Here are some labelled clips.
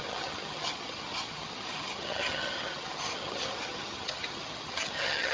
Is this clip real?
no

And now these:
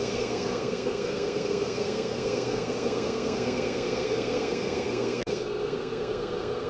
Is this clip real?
no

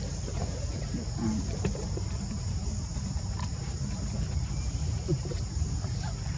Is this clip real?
no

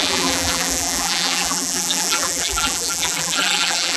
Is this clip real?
no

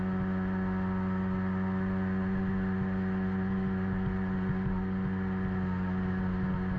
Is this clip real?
yes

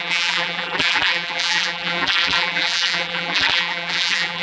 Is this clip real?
no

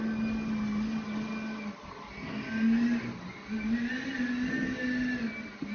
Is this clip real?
yes